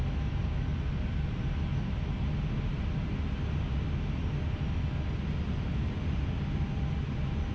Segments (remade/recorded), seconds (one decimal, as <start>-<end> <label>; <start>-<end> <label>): 0.0-7.5 recorded